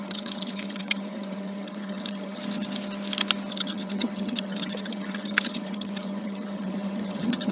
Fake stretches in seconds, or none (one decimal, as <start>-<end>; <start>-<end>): 0.0-2.4; 3.5-7.5